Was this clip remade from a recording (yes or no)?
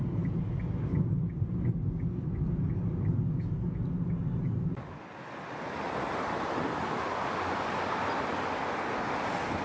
no